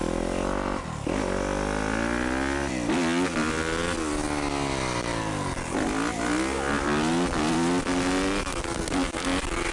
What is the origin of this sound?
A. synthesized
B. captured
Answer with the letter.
B